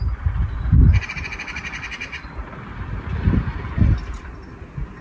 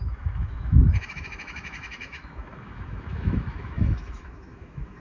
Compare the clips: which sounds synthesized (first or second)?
second